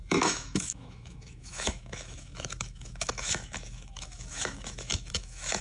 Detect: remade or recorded remade